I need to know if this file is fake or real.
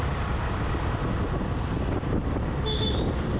real